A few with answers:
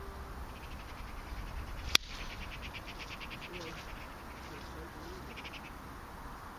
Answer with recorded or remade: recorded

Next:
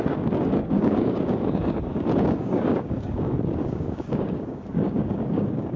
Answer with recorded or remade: remade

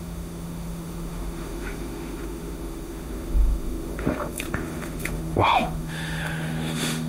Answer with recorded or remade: remade